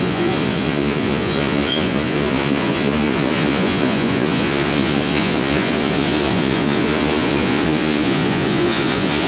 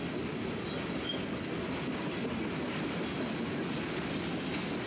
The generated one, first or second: first